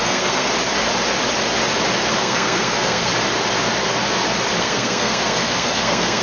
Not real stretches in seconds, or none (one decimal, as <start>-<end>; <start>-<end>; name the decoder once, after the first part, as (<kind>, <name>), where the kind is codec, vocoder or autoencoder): 0.0-0.5 (codec, SNAC); 2.1-3.1; 4.6-6.2